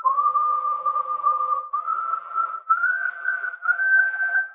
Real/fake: fake